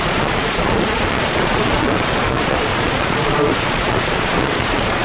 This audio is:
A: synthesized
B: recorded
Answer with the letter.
A